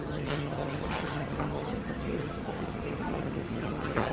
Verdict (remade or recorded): remade